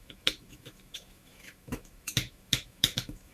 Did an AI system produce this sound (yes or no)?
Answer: yes